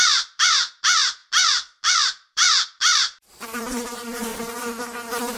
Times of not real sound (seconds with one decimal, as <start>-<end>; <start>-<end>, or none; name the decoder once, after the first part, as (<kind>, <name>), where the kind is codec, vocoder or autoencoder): 0.0-4.3 (vocoder, BigVGAN v2)

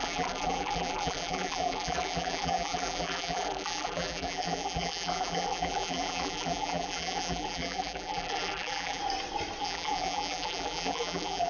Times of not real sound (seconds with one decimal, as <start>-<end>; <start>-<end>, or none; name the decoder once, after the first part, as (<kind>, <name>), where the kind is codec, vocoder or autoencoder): 0.0-9.0 (vocoder, BigVGAN v2); 9.6-11.5

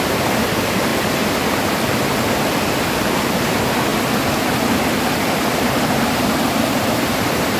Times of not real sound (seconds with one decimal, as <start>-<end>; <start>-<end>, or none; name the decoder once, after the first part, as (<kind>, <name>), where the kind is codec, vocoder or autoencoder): 0.0-3.9 (vocoder, BigVGAN v2); 4.6-7.6

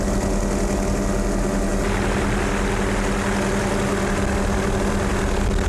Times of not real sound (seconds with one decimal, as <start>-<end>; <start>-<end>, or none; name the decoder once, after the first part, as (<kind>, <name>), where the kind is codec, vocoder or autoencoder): none